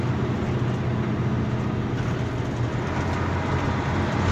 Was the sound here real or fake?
real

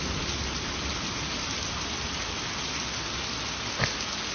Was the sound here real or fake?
real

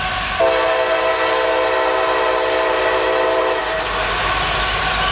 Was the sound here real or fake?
real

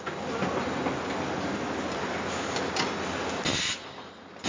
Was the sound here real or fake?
real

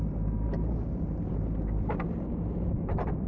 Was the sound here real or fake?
fake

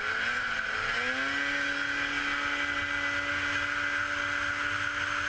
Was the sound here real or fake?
real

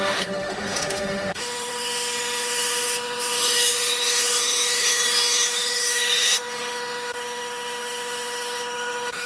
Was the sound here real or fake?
fake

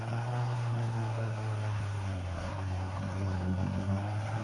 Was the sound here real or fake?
fake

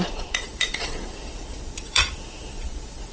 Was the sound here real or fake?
fake